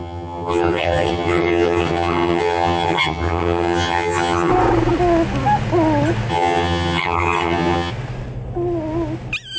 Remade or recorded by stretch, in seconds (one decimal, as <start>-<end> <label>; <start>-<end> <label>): 0.0-4.5 remade; 4.5-6.3 recorded; 6.3-7.9 remade; 7.9-9.6 recorded